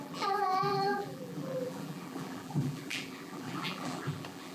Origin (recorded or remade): remade